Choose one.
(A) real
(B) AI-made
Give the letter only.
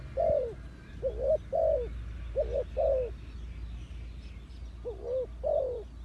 A